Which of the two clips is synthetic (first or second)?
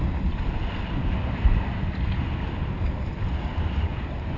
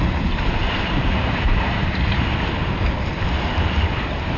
second